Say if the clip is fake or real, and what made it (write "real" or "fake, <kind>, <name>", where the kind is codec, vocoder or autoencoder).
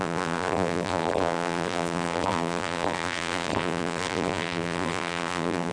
fake, vocoder, BigVGAN v2